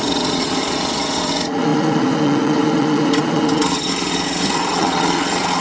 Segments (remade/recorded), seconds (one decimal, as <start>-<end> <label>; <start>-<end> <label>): 0.0-5.6 remade